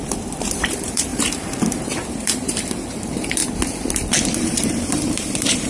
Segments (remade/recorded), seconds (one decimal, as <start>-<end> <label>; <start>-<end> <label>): 0.0-3.4 remade; 3.4-4.4 recorded; 4.4-5.7 remade